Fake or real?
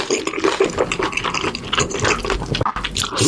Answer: real